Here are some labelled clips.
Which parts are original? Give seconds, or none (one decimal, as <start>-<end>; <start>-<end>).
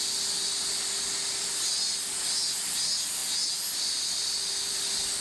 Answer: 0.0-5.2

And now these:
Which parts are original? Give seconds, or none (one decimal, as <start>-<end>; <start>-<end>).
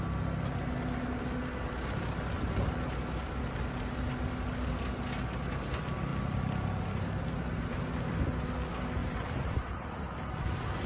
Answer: 0.0-9.0; 9.9-10.9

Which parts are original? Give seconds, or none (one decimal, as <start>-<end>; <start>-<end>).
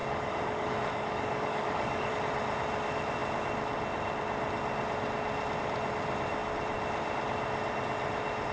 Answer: 2.1-8.5